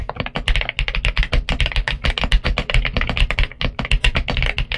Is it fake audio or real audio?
real